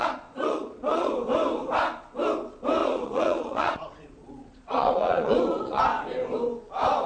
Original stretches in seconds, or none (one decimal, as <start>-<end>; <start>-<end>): 1.1-2.8; 5.8-7.1